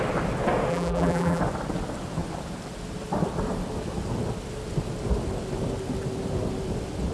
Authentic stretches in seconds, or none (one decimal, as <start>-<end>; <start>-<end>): 0.0-0.7; 1.4-7.1